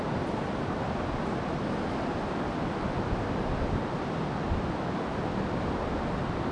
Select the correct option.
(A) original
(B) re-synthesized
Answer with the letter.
A